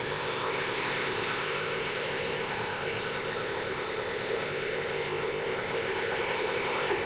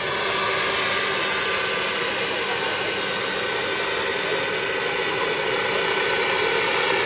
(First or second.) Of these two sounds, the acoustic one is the second